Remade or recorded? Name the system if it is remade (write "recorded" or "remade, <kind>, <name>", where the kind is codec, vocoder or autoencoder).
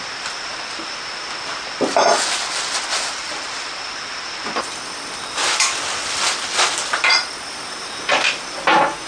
recorded